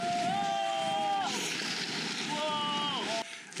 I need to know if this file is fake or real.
real